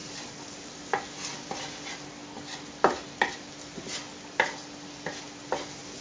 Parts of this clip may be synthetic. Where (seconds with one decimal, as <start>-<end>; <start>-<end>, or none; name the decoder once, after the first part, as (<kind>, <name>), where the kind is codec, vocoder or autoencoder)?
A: none